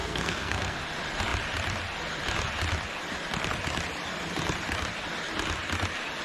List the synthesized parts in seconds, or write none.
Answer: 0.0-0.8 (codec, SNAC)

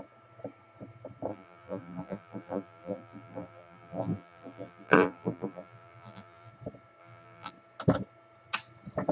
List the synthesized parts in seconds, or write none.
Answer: 1.3-6.5 (vocoder, BigVGAN v2); 7.0-7.5

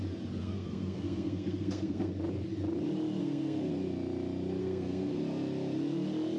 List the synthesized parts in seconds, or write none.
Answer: 0.4-2.1 (codec, SNAC); 3.2-3.7; 4.6-5.2

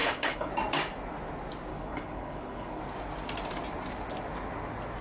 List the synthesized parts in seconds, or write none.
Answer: 0.0-0.5 (codec, HILCodec); 1.7-2.8